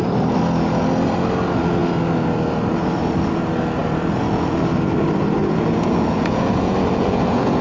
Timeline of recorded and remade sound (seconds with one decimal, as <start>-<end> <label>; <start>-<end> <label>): 0.0-5.4 recorded; 5.4-7.6 remade